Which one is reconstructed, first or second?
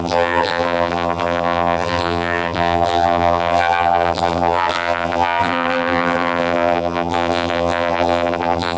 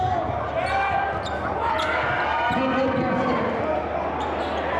first